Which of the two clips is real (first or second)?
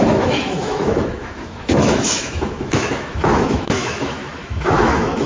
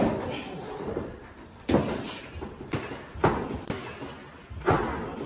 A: second